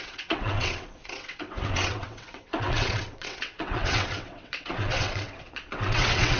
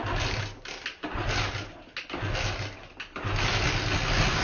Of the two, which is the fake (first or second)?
first